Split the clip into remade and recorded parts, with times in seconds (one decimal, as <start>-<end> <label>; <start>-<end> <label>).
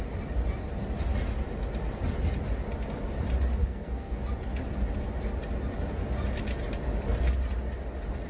0.0-3.6 recorded; 3.6-4.2 remade; 4.2-8.3 recorded